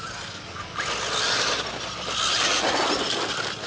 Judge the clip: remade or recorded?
recorded